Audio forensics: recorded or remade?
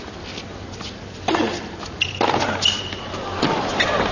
recorded